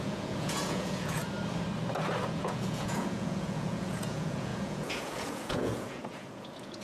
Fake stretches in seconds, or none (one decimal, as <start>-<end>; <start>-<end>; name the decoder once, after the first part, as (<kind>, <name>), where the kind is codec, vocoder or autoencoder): 0.0-1.2 (vocoder, Vocos); 2.2-6.8